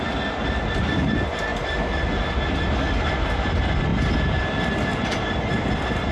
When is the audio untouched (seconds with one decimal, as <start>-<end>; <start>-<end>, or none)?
0.0-6.1